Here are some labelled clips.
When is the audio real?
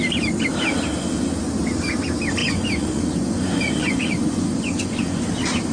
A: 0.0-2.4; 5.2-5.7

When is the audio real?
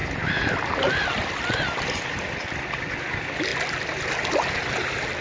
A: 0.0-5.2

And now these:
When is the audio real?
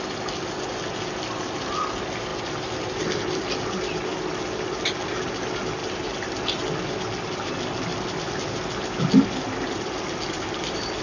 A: 0.0-2.3; 3.5-7.9; 10.1-11.0